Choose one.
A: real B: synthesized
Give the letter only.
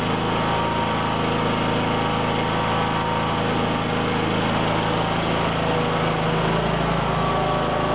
A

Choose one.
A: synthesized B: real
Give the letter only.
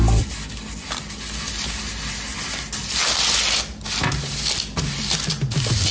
B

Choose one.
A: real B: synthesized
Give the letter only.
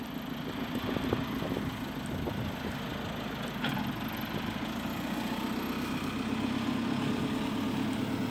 A